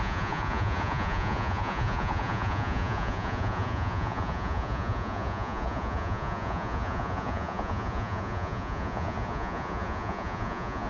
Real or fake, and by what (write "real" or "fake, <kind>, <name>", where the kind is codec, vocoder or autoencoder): fake, vocoder, Vocos